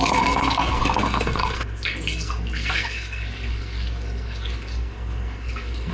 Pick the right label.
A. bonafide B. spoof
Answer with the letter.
B